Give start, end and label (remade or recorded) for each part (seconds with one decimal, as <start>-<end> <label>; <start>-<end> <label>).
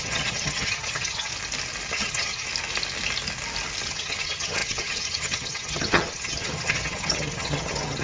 0.0-1.3 remade; 1.3-1.9 recorded; 1.9-2.5 remade; 2.5-3.9 recorded; 3.9-8.0 remade